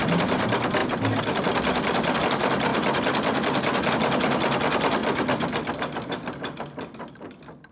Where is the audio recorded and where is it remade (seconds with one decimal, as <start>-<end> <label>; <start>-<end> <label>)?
0.0-7.7 recorded